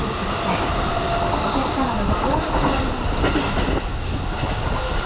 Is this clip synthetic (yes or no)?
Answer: no